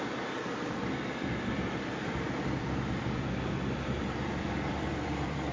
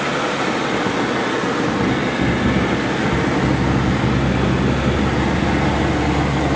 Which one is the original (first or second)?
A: second